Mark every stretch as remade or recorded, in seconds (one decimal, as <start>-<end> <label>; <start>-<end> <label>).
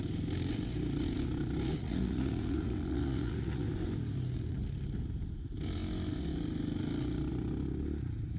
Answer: 0.0-1.8 recorded; 1.8-3.7 remade; 3.7-8.4 recorded